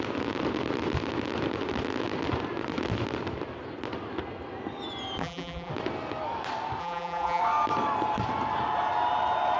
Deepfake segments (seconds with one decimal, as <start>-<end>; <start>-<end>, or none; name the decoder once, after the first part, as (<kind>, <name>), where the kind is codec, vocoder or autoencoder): 5.2-5.7 (vocoder, BigVGAN v2); 6.8-7.4